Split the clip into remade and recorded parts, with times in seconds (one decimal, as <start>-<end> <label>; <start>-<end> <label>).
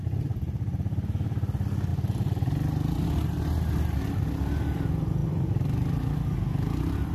0.0-7.1 recorded